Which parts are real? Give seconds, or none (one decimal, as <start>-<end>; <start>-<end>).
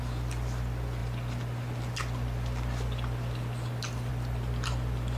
0.0-5.2